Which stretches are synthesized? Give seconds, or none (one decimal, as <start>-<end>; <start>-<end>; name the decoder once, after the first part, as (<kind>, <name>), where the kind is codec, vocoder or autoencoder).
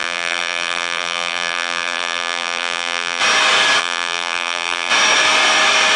0.0-3.2 (vocoder, BigVGAN v2); 3.8-4.9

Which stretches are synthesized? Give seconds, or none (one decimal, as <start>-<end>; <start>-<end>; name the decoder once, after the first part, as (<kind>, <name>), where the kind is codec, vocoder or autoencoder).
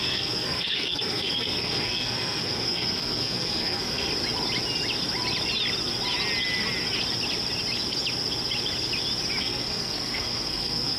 0.0-4.1 (codec, SNAC); 9.4-11.0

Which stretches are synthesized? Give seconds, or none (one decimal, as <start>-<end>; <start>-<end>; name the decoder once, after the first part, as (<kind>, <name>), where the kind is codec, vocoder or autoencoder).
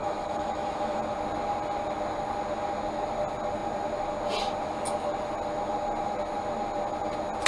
0.0-1.0 (autoencoder, DAC-VAE)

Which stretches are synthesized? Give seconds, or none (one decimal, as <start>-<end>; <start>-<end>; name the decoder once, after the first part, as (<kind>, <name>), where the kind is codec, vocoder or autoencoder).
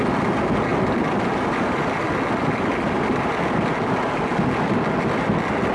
none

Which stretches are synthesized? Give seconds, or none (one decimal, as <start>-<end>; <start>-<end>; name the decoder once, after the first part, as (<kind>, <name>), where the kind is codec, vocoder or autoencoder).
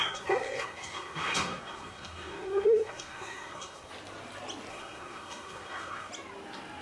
0.0-3.9 (codec, SNAC); 4.7-6.1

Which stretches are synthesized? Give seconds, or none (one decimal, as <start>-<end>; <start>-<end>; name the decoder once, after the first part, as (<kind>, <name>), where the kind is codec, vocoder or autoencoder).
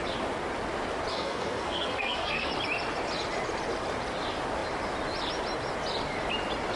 1.1-2.5 (codec, SNAC)